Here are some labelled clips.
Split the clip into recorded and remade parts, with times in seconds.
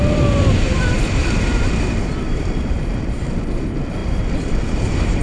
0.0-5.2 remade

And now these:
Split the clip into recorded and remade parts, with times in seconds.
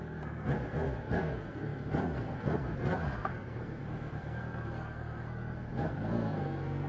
0.0-6.9 remade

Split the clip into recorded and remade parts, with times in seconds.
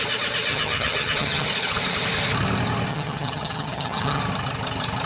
0.0-0.5 recorded; 0.5-1.5 remade; 1.5-2.9 recorded; 2.9-4.2 remade; 4.2-5.1 recorded